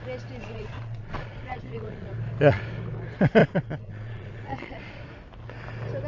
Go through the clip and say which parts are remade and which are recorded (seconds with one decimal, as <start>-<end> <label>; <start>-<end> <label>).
0.0-0.4 recorded; 0.4-2.1 remade; 2.1-3.4 recorded; 3.4-5.0 remade; 5.0-6.1 recorded